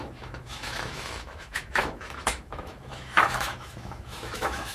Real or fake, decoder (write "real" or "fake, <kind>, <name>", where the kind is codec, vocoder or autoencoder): fake, autoencoder, DAC-VAE